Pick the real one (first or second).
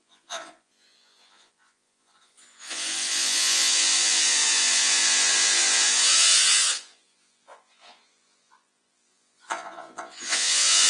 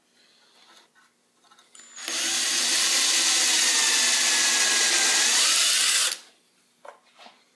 second